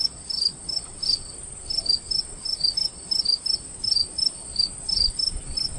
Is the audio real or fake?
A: real